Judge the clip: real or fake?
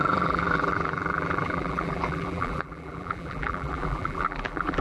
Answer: fake